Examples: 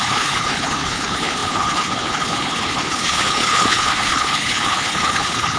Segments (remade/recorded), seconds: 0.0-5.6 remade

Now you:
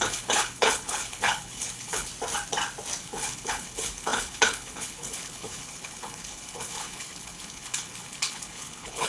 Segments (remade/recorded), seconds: 0.0-2.1 remade; 2.1-3.0 recorded; 3.0-9.1 remade

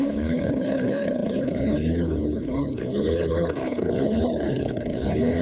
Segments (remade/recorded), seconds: 0.0-5.4 remade